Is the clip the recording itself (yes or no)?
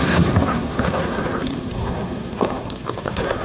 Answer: no